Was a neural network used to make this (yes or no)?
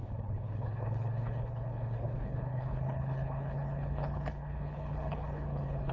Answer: yes